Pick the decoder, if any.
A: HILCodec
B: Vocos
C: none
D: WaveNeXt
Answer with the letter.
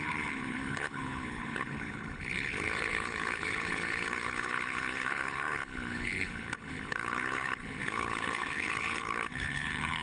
A